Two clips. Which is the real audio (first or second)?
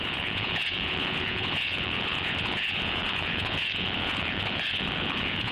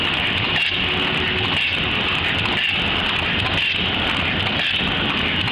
second